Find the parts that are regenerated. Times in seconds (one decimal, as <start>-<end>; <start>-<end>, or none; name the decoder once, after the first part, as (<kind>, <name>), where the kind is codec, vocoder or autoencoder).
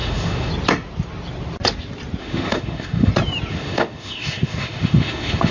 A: 0.0-0.5 (autoencoder, DAC-VAE); 2.2-3.1; 3.5-5.5